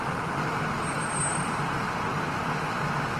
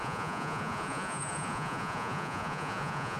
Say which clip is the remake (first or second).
second